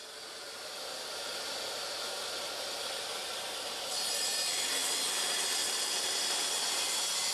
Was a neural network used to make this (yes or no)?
no